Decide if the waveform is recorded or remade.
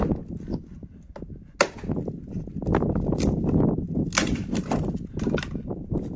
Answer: recorded